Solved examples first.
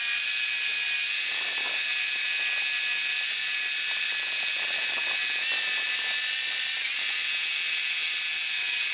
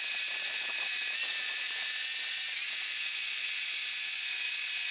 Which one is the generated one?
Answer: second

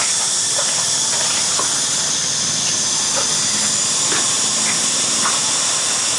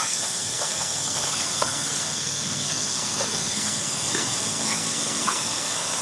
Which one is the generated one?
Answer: second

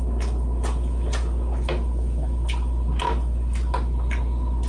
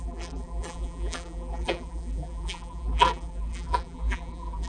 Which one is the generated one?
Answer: second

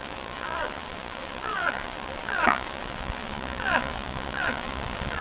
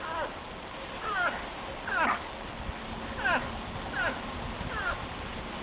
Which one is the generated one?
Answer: first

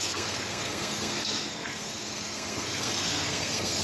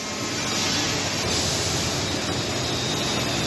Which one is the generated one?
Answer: first